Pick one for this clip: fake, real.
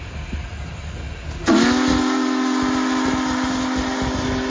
real